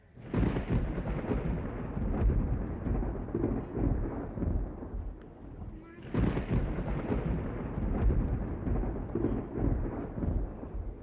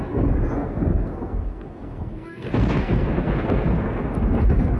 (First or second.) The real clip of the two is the first